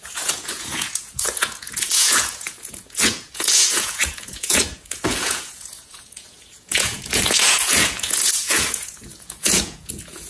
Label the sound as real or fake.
fake